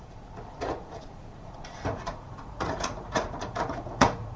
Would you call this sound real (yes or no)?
no